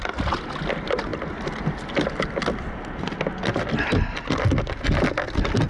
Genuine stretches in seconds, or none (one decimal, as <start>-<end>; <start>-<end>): 0.0-5.7